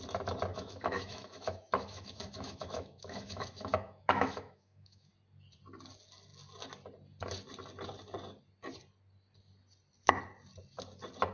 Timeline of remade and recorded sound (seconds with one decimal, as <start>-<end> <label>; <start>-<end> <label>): 0.0-0.5 recorded; 0.5-5.1 remade; 5.1-11.3 recorded